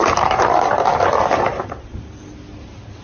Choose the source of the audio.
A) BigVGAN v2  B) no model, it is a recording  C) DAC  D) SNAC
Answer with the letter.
A